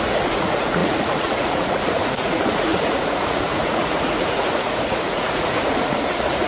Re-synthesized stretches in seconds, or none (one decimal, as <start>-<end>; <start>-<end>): 0.0-6.5